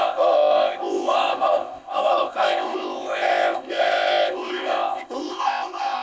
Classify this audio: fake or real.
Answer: fake